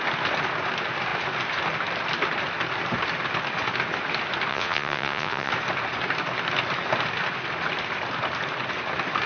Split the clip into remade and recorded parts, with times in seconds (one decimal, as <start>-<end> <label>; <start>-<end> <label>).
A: 0.0-4.5 recorded; 4.5-5.5 remade; 5.5-9.3 recorded